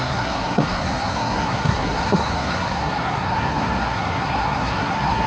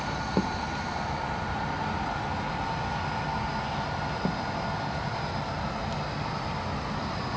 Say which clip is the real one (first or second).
second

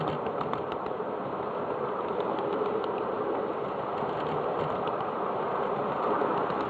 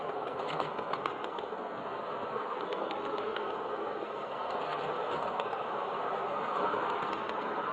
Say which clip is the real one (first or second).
first